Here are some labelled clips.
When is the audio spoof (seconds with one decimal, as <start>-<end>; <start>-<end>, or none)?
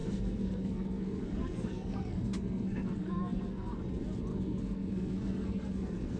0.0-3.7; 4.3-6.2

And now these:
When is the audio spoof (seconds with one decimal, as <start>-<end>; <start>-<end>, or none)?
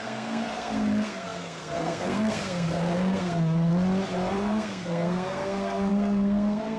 0.0-3.7; 4.3-6.8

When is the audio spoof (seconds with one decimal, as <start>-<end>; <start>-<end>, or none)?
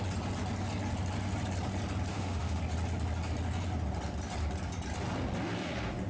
2.1-2.6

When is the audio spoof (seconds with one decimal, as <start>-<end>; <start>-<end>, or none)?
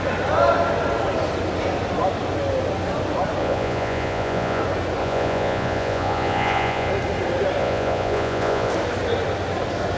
3.4-4.6; 5.0-6.9; 7.6-8.7